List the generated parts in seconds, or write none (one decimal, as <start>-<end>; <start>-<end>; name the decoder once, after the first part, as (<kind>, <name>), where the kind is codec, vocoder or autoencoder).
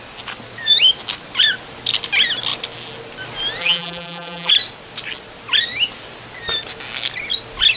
3.6-4.5 (vocoder, BigVGAN v2)